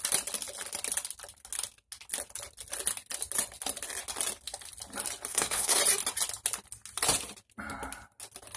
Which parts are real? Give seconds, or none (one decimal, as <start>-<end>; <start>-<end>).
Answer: 0.0-5.3; 5.8-8.6